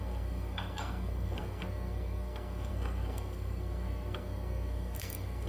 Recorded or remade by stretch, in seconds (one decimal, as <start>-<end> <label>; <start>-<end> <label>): 0.0-5.5 remade